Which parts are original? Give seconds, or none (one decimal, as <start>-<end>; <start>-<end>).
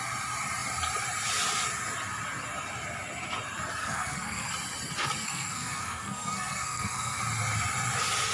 0.0-3.8; 4.5-5.2; 7.2-8.3